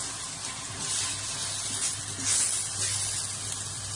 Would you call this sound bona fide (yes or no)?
yes